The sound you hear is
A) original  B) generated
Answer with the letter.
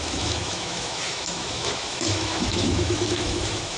B